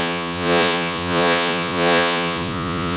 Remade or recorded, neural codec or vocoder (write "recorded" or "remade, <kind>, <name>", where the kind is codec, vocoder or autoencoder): remade, vocoder, Vocos